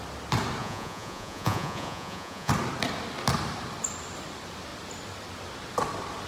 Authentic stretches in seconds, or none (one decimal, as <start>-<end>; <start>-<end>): 0.0-0.6; 2.5-6.3